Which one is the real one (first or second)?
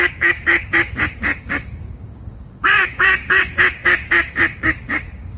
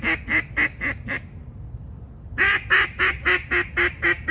second